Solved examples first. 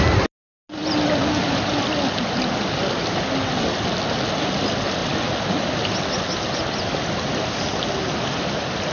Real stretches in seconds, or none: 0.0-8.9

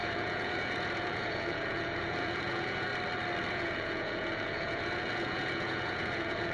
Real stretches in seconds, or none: 2.9-3.5

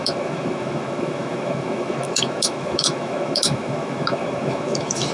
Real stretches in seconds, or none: none

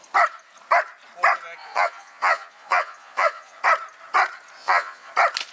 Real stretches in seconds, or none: 0.0-1.6; 3.6-4.6; 5.1-5.5

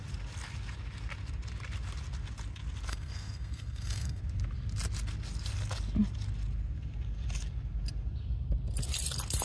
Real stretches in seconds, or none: 0.0-2.9; 4.2-9.4

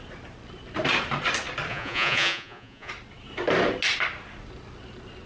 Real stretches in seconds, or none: 0.0-1.7; 2.9-5.3

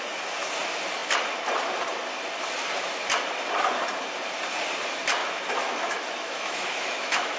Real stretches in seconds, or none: 0.0-5.2